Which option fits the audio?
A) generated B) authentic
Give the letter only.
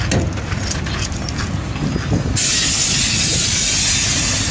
B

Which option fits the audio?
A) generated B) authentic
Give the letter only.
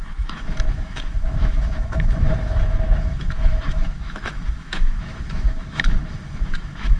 A